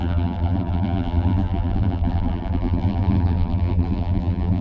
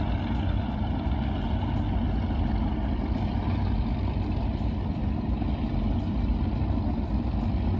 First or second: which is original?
second